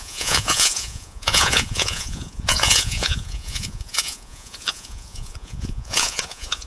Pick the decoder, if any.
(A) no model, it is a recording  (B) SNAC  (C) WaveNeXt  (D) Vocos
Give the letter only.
D